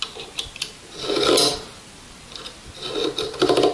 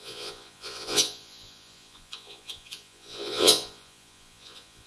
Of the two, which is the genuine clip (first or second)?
first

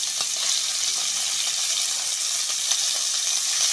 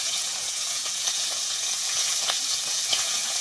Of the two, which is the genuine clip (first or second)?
first